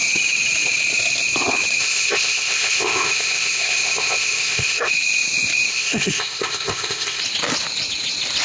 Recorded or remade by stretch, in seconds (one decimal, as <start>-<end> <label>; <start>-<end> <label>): 0.0-1.8 recorded; 1.8-4.9 remade; 4.9-5.7 recorded; 5.7-7.2 remade; 7.2-8.4 recorded